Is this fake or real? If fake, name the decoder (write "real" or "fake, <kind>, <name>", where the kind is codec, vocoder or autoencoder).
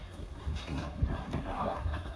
fake, codec, SNAC